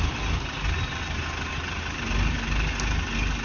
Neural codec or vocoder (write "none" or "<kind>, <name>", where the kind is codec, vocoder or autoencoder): none